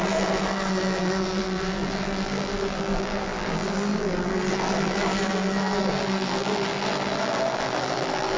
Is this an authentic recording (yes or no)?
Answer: no